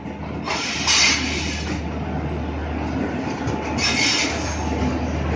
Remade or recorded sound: recorded